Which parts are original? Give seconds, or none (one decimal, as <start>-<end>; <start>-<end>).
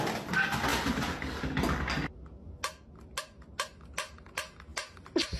0.0-5.4